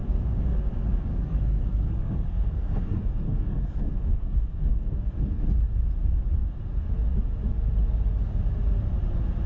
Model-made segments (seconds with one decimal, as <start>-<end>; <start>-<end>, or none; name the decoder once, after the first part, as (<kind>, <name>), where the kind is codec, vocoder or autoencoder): 0.0-0.6 (codec, SNAC); 1.1-5.4